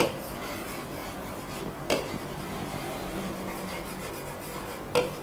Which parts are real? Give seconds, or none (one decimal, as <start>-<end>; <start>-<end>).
0.0-1.0; 4.1-5.2